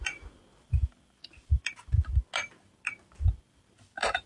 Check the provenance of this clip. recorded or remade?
recorded